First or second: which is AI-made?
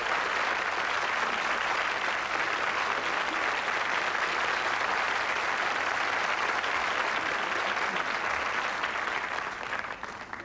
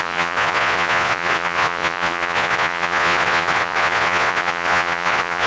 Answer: second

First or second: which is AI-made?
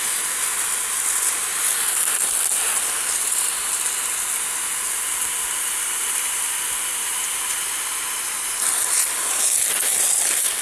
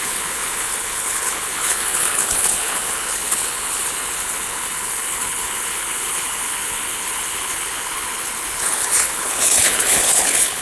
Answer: second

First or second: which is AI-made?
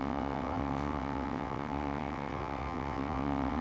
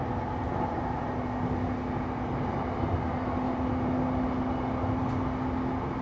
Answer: first